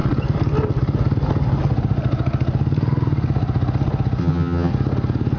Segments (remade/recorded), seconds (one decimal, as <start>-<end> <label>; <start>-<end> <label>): 0.0-4.2 recorded; 4.2-4.7 remade; 4.7-5.4 recorded